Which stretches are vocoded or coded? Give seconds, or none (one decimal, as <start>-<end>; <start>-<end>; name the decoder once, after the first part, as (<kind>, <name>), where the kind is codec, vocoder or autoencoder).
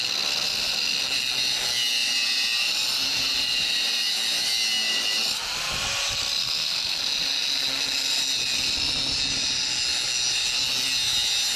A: 6.4-7.0 (codec, SNAC)